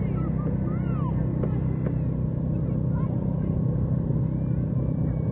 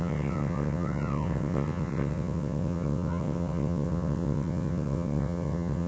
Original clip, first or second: first